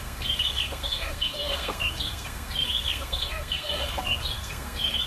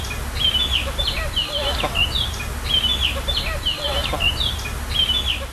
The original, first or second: second